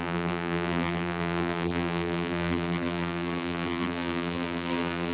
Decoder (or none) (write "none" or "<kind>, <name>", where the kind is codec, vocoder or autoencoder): vocoder, BigVGAN v2